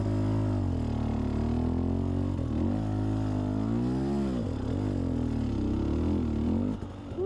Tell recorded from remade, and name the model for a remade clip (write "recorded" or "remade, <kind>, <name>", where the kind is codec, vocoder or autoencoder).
recorded